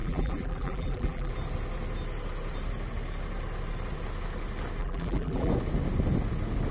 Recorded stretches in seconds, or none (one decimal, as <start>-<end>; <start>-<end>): 1.3-4.8; 5.5-6.7